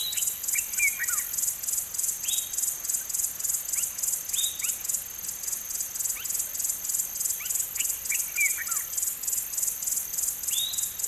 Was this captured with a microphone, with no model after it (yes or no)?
yes